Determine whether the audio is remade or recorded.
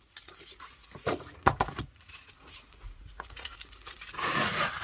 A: remade